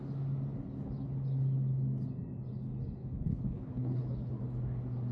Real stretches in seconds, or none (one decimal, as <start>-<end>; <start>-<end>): 0.0-3.0; 4.4-5.1